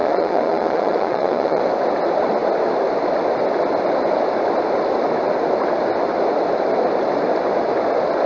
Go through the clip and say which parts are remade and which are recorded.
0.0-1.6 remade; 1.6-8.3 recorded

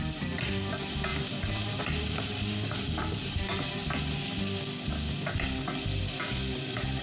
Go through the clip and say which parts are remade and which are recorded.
0.0-3.8 remade; 3.8-6.0 recorded; 6.0-7.0 remade

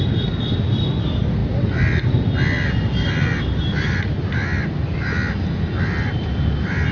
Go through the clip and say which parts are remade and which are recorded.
0.0-6.9 recorded

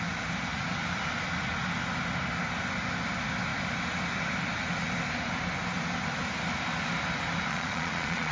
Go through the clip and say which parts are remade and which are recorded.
0.0-7.5 recorded; 7.5-8.3 remade

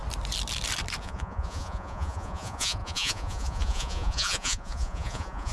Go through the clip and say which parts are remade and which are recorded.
0.0-1.0 recorded; 1.0-5.5 remade

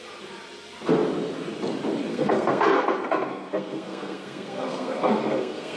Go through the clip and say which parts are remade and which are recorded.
0.0-2.1 recorded; 2.1-5.8 remade

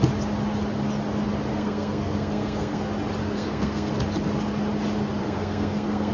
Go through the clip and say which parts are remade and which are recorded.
0.0-1.5 recorded; 1.5-2.8 remade; 2.8-3.2 recorded; 3.2-3.9 remade; 3.9-5.2 recorded; 5.2-6.1 remade

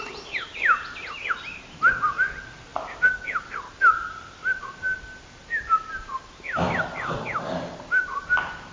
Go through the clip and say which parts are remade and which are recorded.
0.0-8.7 recorded